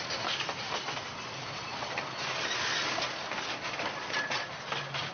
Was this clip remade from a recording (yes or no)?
no